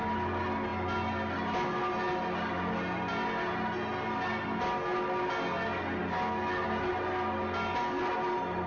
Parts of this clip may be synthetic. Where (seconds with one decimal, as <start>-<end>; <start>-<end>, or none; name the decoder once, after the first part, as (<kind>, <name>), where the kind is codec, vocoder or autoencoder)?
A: none

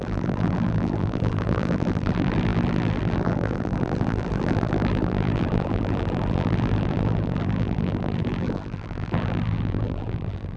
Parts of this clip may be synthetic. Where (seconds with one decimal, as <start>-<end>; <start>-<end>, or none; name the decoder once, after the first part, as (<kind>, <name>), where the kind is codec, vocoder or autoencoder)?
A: 0.0-10.6 (vocoder, BigVGAN v2)

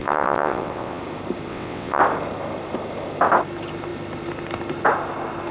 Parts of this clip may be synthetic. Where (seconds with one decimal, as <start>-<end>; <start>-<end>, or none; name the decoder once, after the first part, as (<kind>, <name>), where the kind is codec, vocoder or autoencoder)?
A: 0.0-1.0 (vocoder, WaveNeXt); 1.5-2.0

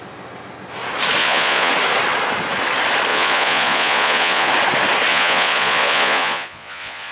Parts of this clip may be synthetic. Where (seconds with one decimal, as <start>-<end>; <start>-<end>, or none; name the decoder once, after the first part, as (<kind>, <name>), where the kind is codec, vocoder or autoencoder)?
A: 1.2-1.7 (vocoder, Vocos); 3.1-4.5; 5.1-7.1

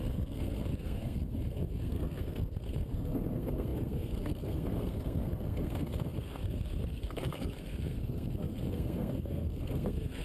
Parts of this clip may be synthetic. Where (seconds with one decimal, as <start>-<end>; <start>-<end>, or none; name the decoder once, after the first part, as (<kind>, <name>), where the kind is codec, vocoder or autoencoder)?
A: 0.0-10.2 (codec, SNAC)

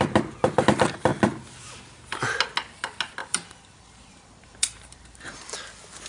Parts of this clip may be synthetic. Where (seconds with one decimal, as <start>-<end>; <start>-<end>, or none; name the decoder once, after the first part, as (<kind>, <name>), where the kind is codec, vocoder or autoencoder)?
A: 3.2-5.5 (vocoder, BigVGAN v2)